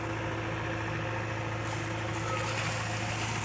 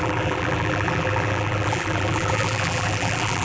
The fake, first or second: second